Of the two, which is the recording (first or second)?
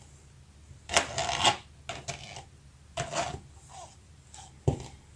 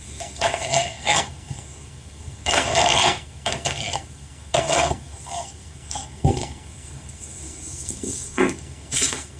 first